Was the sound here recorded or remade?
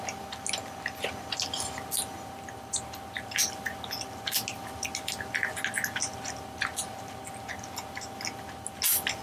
recorded